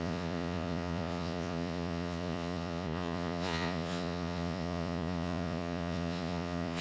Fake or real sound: fake